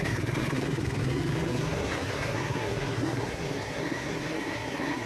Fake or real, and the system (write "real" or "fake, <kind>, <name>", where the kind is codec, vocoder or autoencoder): fake, codec, SNAC